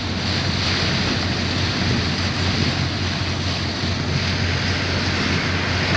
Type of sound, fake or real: real